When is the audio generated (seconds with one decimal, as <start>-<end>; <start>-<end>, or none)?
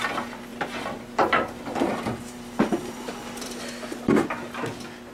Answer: 0.5-3.6